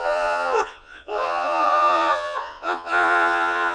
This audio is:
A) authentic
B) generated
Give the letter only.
B